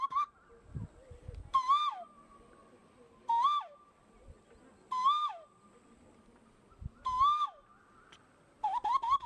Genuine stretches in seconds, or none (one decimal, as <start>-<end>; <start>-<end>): 0.0-9.3